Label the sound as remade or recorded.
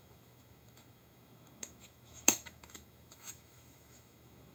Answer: remade